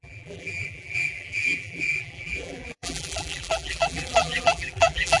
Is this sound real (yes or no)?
no